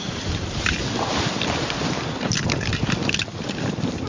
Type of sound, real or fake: real